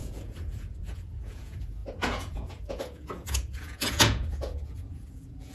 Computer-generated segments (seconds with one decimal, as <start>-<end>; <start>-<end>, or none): 0.0-5.5